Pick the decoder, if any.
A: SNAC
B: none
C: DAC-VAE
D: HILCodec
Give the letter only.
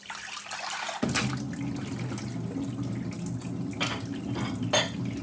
B